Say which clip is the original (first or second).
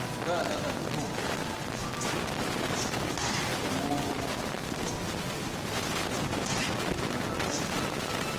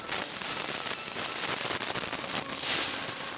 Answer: first